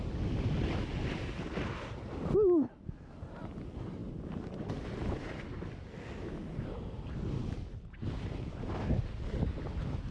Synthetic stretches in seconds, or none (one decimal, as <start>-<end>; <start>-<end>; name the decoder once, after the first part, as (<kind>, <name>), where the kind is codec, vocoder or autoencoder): none